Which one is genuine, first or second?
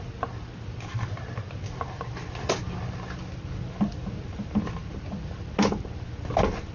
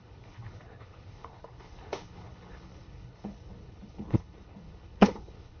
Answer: first